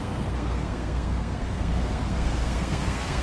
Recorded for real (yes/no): no